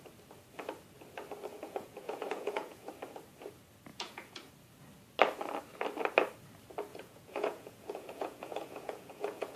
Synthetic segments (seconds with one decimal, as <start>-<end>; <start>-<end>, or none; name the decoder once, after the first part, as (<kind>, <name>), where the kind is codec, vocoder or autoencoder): 1.5-2.9 (vocoder, Vocos); 3.9-4.5; 6.9-9.6